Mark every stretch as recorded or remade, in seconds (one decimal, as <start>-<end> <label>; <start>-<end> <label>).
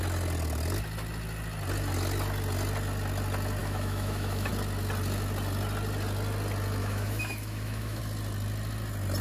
0.0-3.6 recorded; 3.6-4.5 remade; 4.5-6.8 recorded; 6.8-8.0 remade; 8.0-9.2 recorded